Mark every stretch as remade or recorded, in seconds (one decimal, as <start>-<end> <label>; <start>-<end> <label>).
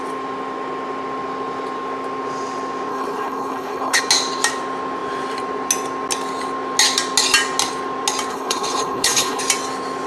0.0-2.9 recorded; 2.9-4.0 remade; 4.0-8.3 recorded; 8.3-9.4 remade; 9.4-10.1 recorded